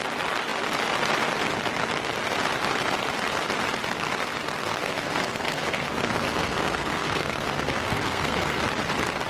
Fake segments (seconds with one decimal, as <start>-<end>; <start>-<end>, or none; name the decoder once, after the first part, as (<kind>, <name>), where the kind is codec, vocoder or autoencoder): 4.6-8.6 (codec, SNAC)